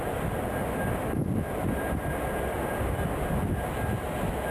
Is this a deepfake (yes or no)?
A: no